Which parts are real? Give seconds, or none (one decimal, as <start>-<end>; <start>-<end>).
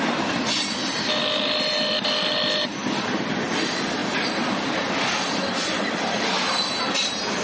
0.0-7.4